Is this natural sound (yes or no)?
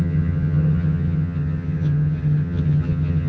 no